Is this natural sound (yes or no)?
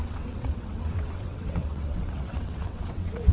no